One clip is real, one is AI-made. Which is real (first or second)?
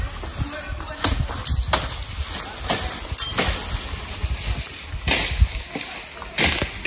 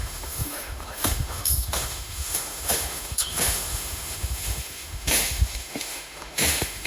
first